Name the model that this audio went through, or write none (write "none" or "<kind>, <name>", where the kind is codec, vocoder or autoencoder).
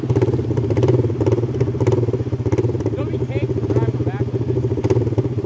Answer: none